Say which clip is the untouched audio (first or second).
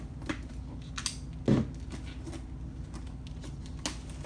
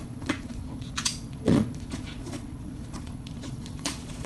first